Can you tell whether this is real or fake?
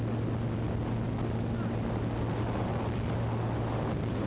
real